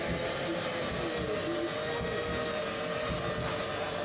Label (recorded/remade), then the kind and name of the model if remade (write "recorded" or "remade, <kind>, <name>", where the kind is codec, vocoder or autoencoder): recorded